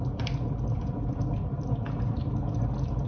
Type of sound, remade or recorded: recorded